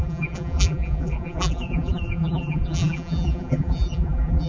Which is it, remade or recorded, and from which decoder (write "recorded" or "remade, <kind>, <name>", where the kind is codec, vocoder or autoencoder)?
remade, vocoder, BigVGAN v2